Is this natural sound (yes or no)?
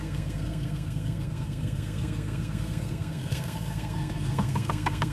no